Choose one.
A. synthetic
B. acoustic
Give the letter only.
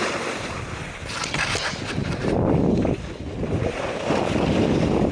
A